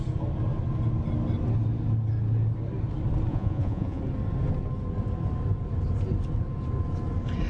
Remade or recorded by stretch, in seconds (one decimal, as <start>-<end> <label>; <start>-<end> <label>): 0.0-3.3 recorded; 3.3-4.0 remade; 4.0-7.5 recorded